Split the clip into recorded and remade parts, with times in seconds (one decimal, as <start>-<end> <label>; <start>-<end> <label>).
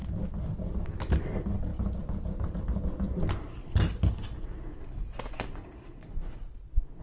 0.0-1.7 recorded; 1.7-2.6 remade; 2.6-5.6 recorded; 5.6-7.0 remade